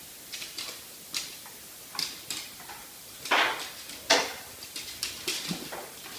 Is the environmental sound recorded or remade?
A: recorded